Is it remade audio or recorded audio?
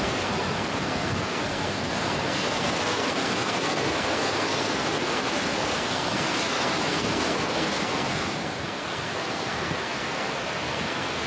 remade